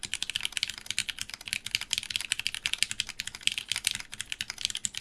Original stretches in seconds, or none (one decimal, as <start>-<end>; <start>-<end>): 0.0-5.0